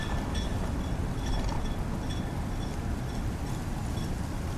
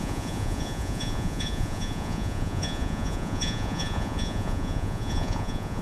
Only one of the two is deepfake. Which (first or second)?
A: second